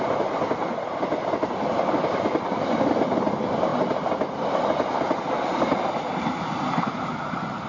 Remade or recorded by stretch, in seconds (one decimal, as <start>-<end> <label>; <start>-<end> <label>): 0.0-7.7 recorded